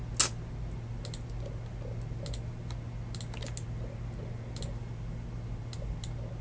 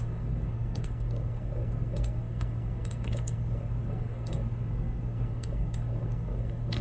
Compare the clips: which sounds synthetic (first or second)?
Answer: second